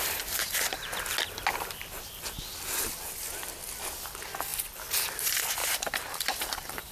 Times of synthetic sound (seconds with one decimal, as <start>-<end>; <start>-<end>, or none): 0.4-0.9; 5.6-6.9